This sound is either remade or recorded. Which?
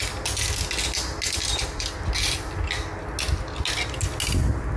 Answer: recorded